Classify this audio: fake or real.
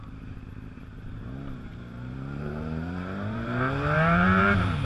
fake